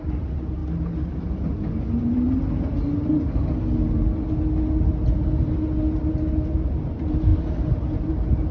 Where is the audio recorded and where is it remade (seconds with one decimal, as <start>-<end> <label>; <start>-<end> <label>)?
0.0-0.6 remade; 0.6-2.0 recorded; 2.0-2.4 remade; 2.4-6.7 recorded; 6.7-8.5 remade